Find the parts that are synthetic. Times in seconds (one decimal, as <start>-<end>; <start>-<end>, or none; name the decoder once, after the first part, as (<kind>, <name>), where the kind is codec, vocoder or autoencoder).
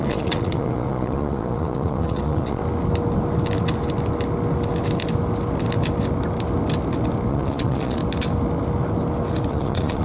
0.0-2.6 (vocoder, Vocos); 7.3-8.0; 9.5-10.0